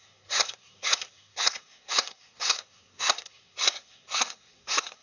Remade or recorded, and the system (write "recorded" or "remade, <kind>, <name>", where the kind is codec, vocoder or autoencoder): remade, codec, SNAC